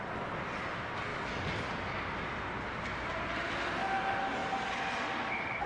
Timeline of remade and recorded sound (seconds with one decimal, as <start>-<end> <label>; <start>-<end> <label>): 0.0-5.7 recorded